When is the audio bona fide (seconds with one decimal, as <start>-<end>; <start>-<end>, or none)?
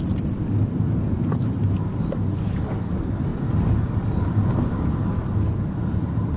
0.0-6.4